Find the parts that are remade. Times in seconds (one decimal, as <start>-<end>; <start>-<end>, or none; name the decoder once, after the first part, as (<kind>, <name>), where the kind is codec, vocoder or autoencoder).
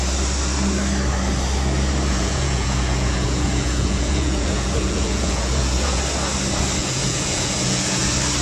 2.1-6.0 (vocoder, Vocos); 6.8-8.0